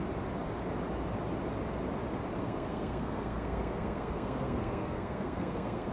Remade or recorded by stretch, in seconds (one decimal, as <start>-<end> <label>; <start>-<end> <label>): 0.0-2.4 recorded; 2.4-5.9 remade